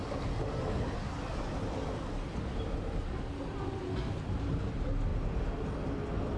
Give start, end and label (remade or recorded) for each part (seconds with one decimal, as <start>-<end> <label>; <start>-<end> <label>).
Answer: 0.0-6.4 recorded